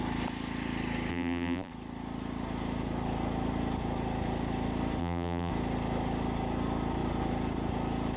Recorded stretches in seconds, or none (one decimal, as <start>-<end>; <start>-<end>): 0.0-1.1; 1.7-5.0; 5.5-8.2